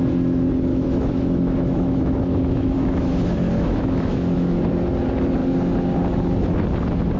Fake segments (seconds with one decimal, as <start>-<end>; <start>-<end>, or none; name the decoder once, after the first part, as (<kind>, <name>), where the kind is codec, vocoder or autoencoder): 0.7-4.7 (autoencoder, DAC-VAE)